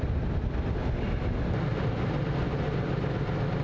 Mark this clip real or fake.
real